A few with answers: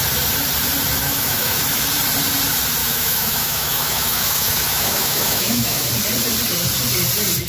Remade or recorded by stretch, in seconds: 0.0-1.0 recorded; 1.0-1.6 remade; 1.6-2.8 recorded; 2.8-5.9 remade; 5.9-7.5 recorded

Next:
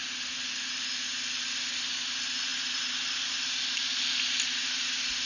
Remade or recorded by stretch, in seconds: 0.0-5.3 recorded

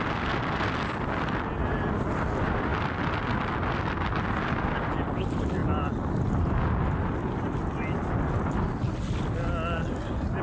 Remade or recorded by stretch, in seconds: 0.0-10.4 recorded

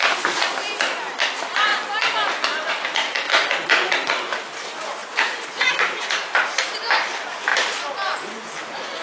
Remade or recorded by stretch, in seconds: 0.0-5.0 recorded; 5.0-6.2 remade; 6.2-9.0 recorded

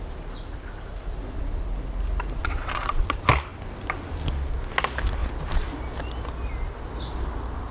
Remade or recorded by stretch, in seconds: 0.0-2.4 recorded; 2.4-3.0 remade; 3.0-7.7 recorded

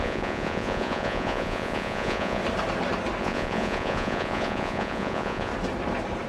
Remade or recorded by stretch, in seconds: 0.0-2.4 remade; 2.4-3.2 recorded; 3.2-5.5 remade; 5.5-6.3 recorded

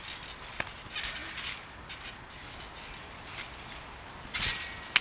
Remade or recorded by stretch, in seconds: 0.0-5.0 recorded